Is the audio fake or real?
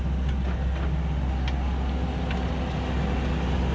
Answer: real